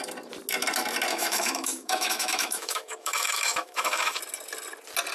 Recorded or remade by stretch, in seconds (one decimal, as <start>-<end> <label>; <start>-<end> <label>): 0.0-1.1 recorded; 1.1-4.2 remade; 4.2-5.1 recorded

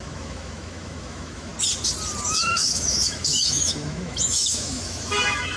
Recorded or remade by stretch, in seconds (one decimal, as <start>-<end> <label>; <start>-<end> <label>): 0.0-1.5 remade; 1.5-2.3 recorded; 2.3-5.6 remade